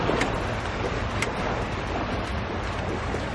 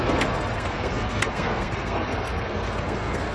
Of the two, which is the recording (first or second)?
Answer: first